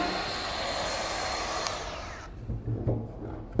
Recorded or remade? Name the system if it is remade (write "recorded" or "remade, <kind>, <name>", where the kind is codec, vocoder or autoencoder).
recorded